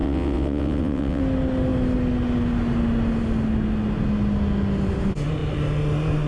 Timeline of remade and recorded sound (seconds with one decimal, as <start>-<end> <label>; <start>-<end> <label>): 0.0-1.2 remade; 1.2-6.3 recorded